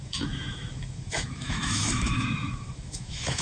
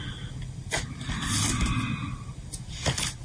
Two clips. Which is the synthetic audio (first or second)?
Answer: first